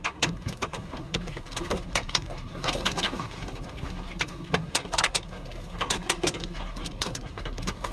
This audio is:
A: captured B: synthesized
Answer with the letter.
B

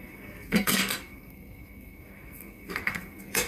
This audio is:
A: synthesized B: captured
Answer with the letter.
A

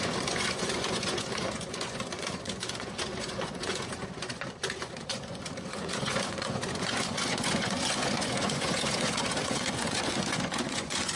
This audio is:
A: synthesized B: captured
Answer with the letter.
A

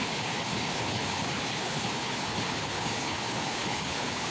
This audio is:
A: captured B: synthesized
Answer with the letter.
B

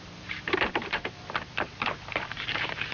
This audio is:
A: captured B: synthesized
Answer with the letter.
B